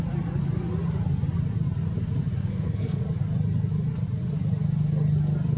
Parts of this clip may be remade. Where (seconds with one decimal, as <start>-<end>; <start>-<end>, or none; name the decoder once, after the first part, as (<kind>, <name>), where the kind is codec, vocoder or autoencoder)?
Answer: 2.4-3.0 (codec, SNAC)